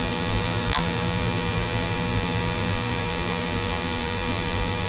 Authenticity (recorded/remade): remade